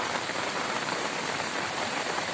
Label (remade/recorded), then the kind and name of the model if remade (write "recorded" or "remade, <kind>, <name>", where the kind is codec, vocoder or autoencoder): remade, vocoder, BigVGAN v2